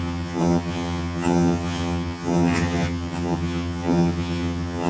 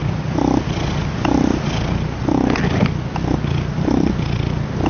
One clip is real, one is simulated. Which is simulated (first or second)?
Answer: first